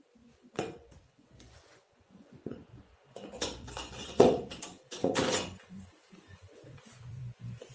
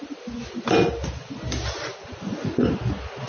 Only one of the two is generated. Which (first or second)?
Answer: first